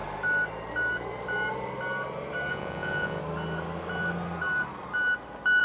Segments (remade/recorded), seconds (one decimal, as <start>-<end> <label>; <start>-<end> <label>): 0.0-2.5 recorded; 2.5-3.2 remade; 3.2-5.6 recorded